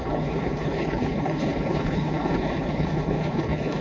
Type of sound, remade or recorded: remade